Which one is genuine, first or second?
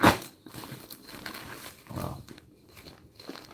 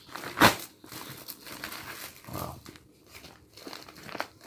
second